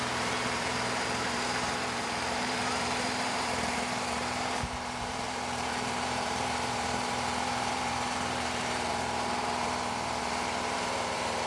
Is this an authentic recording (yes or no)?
no